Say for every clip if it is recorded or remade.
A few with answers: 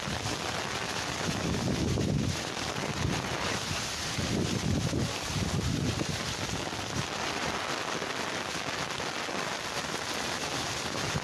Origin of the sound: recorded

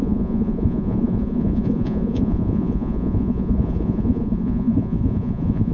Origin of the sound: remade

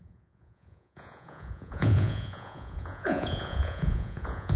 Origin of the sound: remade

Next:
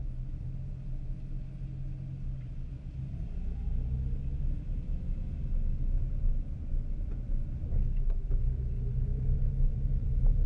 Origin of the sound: recorded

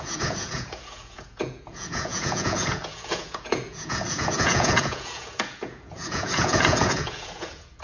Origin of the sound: remade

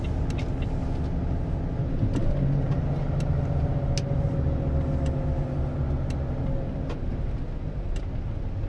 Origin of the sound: recorded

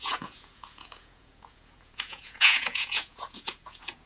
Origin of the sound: remade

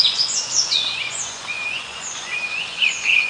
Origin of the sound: remade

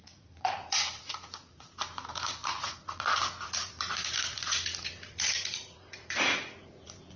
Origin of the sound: remade